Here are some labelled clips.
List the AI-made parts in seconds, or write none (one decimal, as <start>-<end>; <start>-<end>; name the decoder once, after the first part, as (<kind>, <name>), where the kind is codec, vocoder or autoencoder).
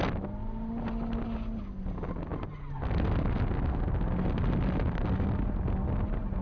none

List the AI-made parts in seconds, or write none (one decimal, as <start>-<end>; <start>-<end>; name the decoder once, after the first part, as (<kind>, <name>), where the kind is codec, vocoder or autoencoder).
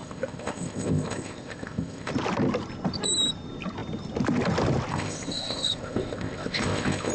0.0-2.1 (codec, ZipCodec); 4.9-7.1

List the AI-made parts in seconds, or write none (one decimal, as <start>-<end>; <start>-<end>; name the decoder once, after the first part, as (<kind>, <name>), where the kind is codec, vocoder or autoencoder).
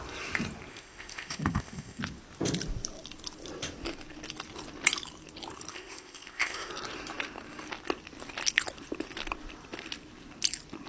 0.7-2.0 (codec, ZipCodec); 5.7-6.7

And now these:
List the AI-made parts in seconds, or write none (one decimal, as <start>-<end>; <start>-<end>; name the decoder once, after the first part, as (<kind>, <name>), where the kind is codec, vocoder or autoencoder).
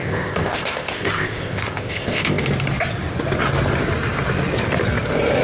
0.0-2.4 (codec, ZipCodec)